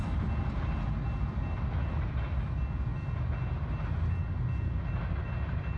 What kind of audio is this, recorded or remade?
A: recorded